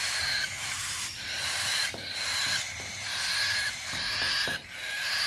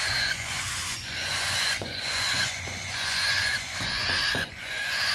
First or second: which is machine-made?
second